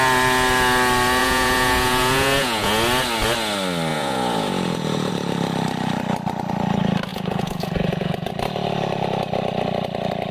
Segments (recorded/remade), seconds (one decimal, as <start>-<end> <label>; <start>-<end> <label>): 0.0-1.2 recorded; 1.2-2.7 remade; 2.7-3.9 recorded; 3.9-5.1 remade; 5.1-7.1 recorded; 7.1-8.3 remade; 8.3-10.3 recorded